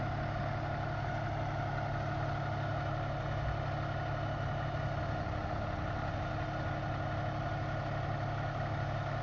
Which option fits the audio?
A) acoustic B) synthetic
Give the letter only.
A